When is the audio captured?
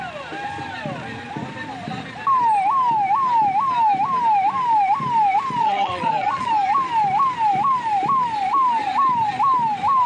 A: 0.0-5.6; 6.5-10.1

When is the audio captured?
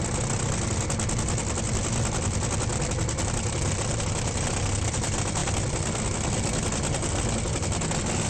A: 0.0-8.3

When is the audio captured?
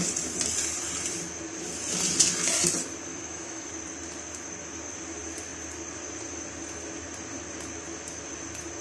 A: 0.0-3.1; 3.7-8.8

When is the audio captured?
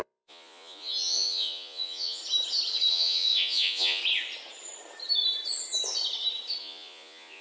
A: 2.2-2.9; 4.0-6.6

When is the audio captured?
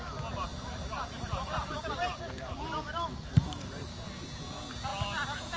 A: 0.0-0.5; 3.9-5.6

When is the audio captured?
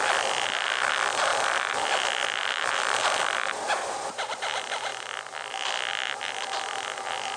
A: 4.9-5.9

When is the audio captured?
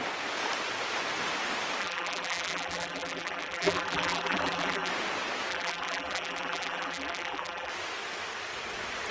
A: 0.0-1.8; 4.9-5.5; 7.7-9.1